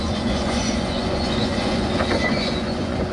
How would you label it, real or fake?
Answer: fake